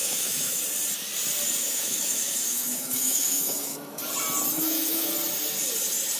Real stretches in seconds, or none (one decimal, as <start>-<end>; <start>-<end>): 0.6-1.6; 4.0-4.5; 5.1-6.2